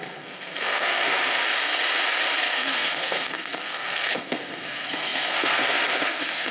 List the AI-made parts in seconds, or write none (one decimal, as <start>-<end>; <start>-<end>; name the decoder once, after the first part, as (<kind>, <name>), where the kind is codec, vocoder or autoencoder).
0.0-1.4 (codec, SNAC); 2.4-6.5